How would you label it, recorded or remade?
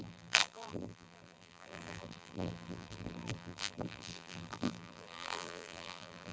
remade